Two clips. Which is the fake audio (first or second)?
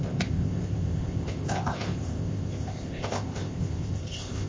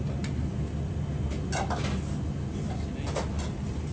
first